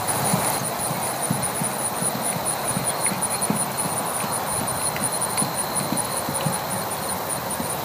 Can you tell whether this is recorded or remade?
recorded